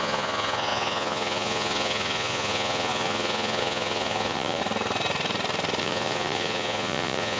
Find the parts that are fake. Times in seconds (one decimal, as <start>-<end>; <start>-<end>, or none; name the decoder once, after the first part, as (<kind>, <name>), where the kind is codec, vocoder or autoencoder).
0.0-4.6 (vocoder, Vocos); 5.8-7.4